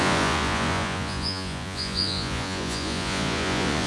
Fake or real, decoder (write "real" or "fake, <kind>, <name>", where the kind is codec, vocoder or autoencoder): fake, vocoder, Vocos